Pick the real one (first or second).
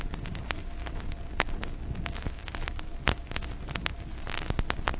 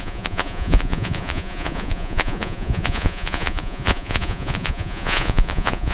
first